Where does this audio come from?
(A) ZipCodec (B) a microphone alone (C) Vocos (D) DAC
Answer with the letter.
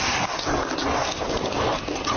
B